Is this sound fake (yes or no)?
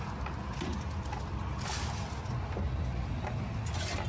no